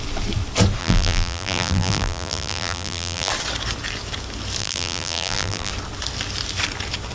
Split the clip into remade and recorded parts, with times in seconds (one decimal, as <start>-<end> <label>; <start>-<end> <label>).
0.0-0.8 recorded; 0.8-3.3 remade; 3.3-4.6 recorded; 4.6-5.7 remade; 5.7-7.1 recorded